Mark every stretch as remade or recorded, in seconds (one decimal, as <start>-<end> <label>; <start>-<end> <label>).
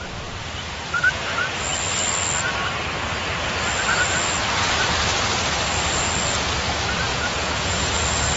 0.0-7.1 recorded; 7.1-7.9 remade; 7.9-8.4 recorded